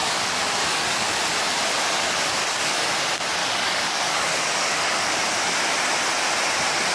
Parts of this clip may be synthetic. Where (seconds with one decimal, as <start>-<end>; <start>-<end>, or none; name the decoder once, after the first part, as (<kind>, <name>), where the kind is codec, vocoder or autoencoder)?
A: 0.0-1.1 (codec, DAC); 2.4-2.9; 3.4-5.1